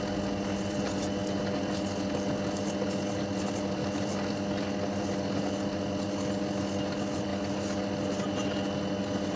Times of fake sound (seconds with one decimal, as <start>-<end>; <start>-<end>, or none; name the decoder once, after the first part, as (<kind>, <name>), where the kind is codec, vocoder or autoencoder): 3.8-4.3 (vocoder, BigVGAN v2)